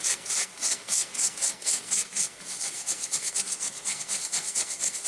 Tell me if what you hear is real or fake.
fake